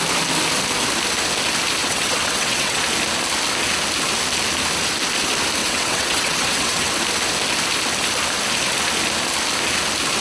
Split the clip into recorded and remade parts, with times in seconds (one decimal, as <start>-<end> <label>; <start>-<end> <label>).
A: 0.0-1.8 recorded; 1.8-2.8 remade; 2.8-5.6 recorded; 5.6-6.9 remade; 6.9-10.2 recorded